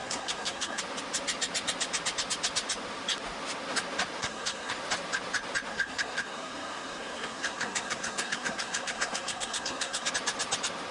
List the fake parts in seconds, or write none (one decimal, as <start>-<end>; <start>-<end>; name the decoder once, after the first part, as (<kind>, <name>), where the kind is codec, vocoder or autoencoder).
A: 0.0-0.8 (codec, SNAC); 4.2-4.7; 5.7-10.1